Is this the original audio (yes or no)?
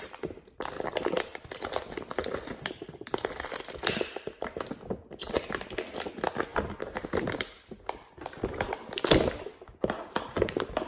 no